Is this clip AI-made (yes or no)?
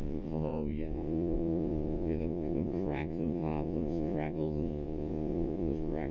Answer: yes